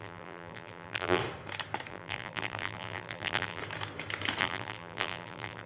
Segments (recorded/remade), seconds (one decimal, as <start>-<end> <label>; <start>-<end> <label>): 0.0-1.2 remade; 1.2-1.9 recorded; 1.9-3.6 remade; 3.6-4.4 recorded; 4.4-5.7 remade